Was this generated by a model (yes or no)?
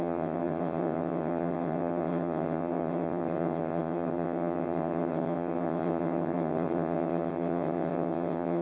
yes